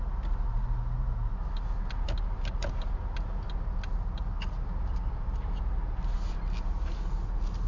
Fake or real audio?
real